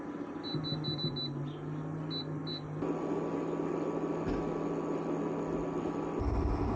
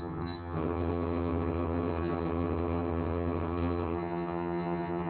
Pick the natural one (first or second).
first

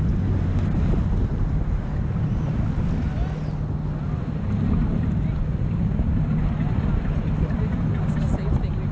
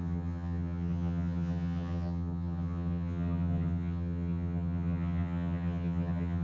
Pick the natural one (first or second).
first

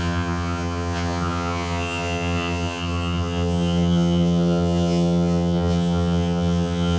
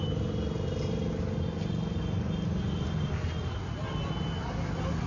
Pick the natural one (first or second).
second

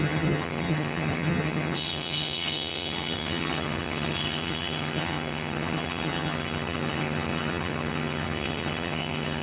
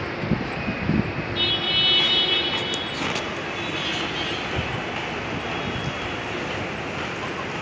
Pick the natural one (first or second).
second